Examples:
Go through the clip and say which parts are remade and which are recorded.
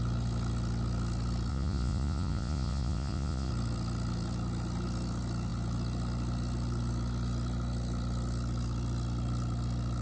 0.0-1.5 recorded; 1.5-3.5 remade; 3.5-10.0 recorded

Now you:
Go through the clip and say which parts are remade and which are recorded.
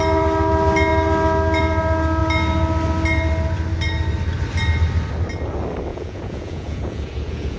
0.0-5.9 recorded; 5.9-7.6 remade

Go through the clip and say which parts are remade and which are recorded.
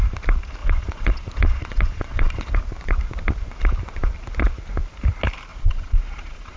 0.0-0.6 recorded; 0.6-2.6 remade; 2.6-5.5 recorded; 5.5-6.6 remade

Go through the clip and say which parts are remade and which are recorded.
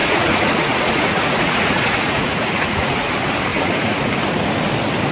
0.0-3.1 remade; 3.1-3.5 recorded; 3.5-4.1 remade; 4.1-5.1 recorded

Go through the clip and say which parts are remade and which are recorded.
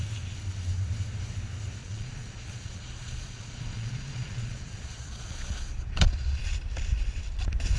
0.0-1.8 recorded; 1.8-6.4 remade; 6.4-7.8 recorded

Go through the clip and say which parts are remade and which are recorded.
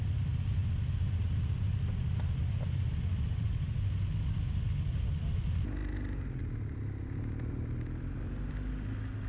0.0-9.3 recorded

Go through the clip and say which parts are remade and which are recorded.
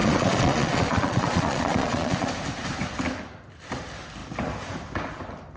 0.0-2.3 remade; 2.3-5.6 recorded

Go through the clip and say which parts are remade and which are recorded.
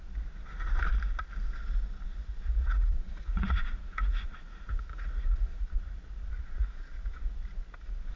0.0-2.6 recorded; 2.6-5.6 remade; 5.6-8.2 recorded